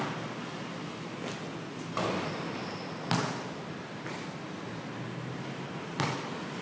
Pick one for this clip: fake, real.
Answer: real